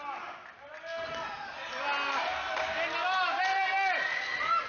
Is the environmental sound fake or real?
real